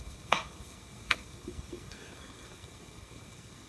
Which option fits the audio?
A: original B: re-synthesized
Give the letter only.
B